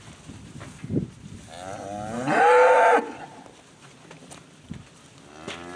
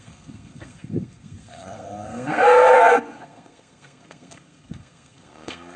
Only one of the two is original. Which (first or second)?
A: first